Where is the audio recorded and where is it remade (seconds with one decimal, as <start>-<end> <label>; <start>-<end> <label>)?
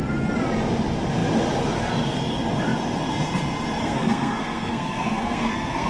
0.0-3.8 recorded; 3.8-5.9 remade